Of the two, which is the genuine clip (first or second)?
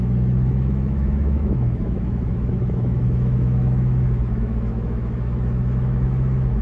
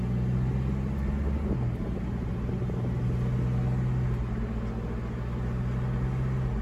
second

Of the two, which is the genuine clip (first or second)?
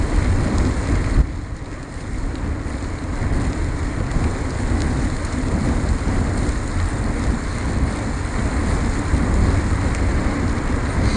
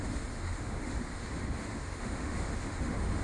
first